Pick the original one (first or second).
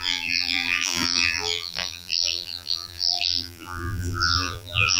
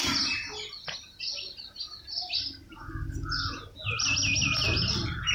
second